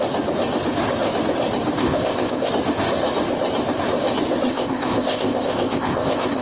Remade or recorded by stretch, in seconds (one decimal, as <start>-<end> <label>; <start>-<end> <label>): 0.0-1.8 recorded; 1.8-2.5 remade; 2.5-4.5 recorded; 4.5-6.4 remade